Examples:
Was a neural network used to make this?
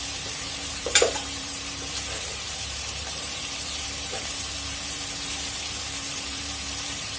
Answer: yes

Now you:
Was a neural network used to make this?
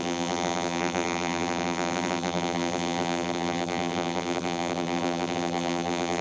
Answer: yes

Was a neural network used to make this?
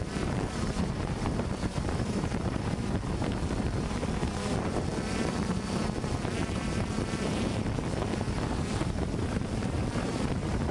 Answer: yes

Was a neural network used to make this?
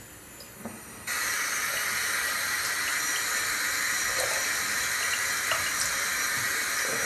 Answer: no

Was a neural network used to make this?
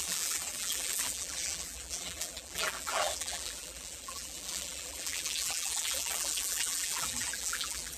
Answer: yes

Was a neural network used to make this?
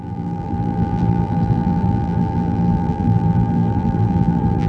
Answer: yes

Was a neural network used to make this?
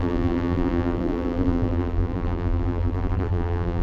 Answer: yes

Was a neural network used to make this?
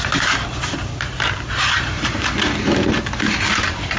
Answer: yes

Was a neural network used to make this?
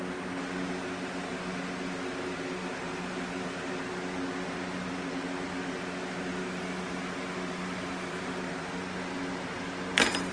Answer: no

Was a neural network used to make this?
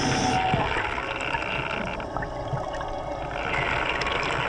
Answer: no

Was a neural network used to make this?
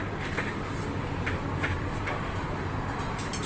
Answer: no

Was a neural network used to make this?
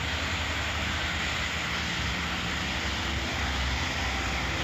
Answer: no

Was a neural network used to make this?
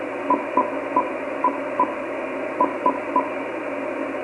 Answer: no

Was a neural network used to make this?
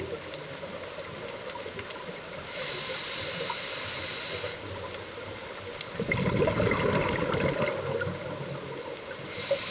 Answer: no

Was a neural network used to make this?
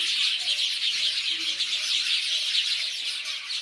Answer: no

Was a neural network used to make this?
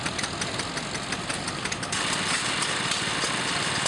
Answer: no